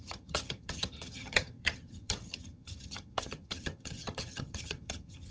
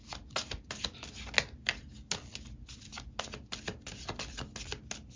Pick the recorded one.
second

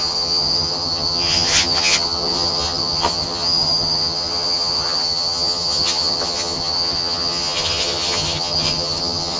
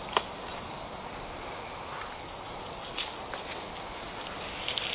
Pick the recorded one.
second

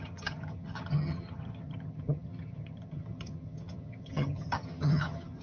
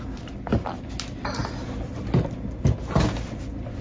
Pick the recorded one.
second